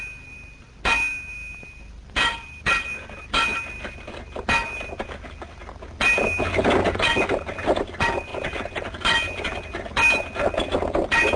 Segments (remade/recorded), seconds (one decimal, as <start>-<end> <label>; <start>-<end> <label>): 0.0-11.4 recorded